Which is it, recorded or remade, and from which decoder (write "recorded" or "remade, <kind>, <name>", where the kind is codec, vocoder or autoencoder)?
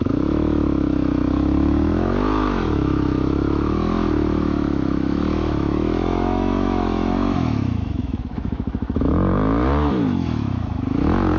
remade, autoencoder, DAC-VAE